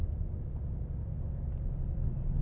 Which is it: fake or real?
real